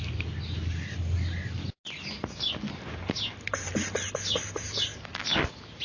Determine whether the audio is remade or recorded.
recorded